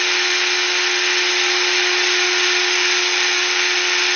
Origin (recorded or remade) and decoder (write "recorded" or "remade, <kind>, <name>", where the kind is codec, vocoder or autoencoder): recorded